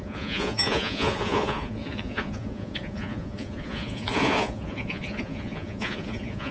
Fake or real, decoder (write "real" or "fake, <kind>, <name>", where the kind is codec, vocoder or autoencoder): fake, vocoder, Vocos